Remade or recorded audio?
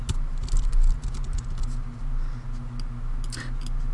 recorded